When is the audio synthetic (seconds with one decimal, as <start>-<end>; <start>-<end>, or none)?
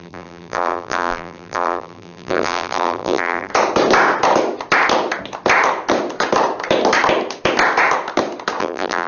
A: 0.0-3.5; 8.6-9.1